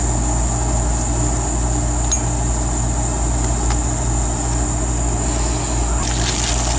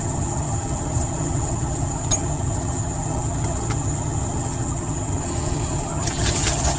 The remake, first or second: second